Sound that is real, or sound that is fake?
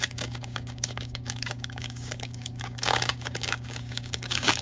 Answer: fake